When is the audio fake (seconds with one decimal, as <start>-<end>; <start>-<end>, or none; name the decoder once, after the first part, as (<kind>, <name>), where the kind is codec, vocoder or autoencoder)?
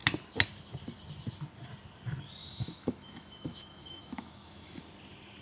2.4-4.8 (autoencoder, DAC-VAE)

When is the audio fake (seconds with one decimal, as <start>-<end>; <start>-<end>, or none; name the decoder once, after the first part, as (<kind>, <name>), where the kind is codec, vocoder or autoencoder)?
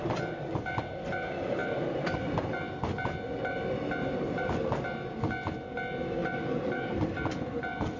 none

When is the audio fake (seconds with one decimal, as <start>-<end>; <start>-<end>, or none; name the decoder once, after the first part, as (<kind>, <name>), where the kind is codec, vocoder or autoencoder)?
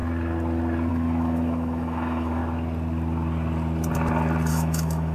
0.9-2.4 (autoencoder, DAC-VAE); 4.5-5.1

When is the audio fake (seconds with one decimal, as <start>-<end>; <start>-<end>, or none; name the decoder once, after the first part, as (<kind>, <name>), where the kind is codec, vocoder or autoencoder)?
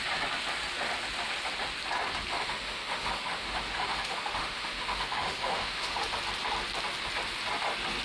2.3-6.0 (autoencoder, DAC-VAE)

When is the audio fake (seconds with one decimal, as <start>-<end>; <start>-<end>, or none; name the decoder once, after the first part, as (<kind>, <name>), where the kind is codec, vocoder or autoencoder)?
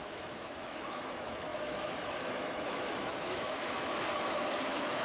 0.0-5.0 (autoencoder, DAC-VAE)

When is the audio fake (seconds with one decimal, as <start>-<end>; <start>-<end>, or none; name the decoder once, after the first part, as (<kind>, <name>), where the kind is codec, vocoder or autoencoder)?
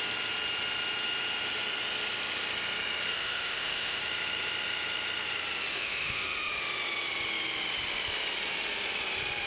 3.1-4.0 (autoencoder, DAC-VAE); 5.7-6.5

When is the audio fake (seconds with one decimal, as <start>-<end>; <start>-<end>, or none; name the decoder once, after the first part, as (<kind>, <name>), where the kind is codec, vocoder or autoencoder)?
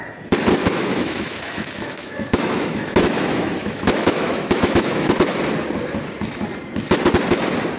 0.6-5.1 (autoencoder, DAC-VAE)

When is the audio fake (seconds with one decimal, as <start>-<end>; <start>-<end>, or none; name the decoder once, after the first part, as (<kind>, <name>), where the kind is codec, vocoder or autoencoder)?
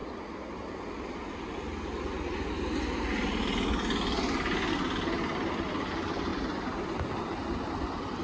none